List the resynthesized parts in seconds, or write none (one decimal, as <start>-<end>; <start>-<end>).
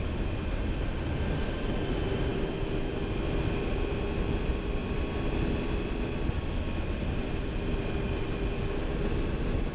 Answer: 2.3-2.9